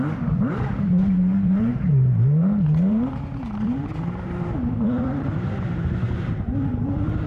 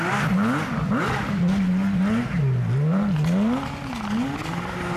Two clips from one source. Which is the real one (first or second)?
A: second